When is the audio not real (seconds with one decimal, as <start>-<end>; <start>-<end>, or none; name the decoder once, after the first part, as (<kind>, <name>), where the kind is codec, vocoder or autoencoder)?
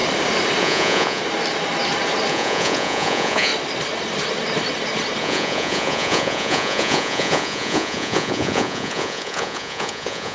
0.6-1.2 (vocoder, Vocos); 2.3-3.5; 5.2-10.3